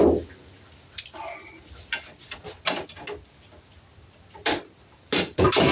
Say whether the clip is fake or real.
real